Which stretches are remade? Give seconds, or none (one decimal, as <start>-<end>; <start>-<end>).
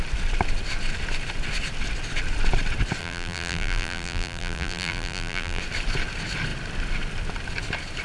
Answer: 3.0-5.6